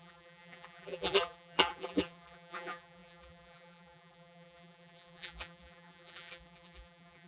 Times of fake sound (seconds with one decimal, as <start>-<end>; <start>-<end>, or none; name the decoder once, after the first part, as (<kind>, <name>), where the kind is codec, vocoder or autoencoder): 0.0-7.3 (vocoder, BigVGAN v2)